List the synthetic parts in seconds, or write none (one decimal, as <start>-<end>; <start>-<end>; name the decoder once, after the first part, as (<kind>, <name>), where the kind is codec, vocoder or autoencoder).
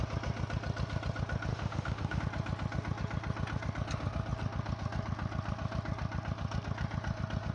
1.5-2.2 (autoencoder, DAC-VAE)